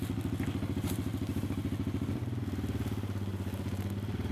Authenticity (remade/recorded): recorded